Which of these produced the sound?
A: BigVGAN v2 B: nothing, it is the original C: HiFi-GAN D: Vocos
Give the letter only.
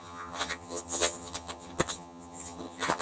C